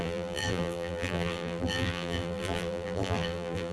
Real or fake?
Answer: fake